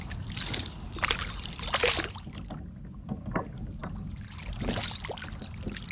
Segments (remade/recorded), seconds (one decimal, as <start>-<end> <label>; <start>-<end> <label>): 0.0-5.9 recorded